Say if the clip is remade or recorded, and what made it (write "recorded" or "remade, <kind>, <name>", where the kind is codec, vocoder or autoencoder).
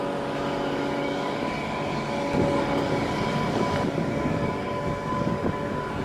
remade, codec, DAC